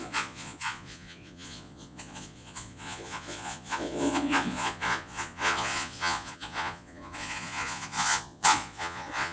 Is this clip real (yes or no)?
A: no